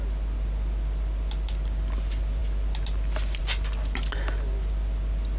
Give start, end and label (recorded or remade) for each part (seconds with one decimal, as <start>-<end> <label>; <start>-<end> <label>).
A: 0.0-5.4 recorded